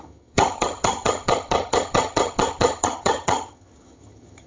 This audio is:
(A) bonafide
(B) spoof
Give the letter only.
B